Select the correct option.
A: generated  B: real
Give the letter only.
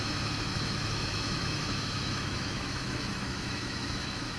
A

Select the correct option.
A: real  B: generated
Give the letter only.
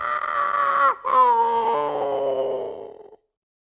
A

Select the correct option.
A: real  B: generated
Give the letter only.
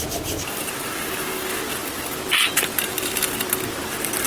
A